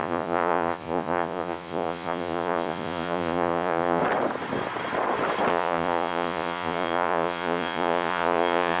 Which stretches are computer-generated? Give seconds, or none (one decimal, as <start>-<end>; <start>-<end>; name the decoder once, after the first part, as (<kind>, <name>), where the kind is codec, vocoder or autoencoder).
0.0-4.0 (vocoder, Vocos); 5.5-8.8